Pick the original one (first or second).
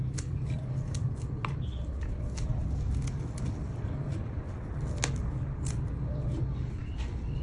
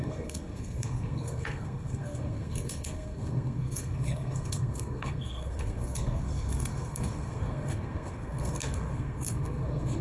first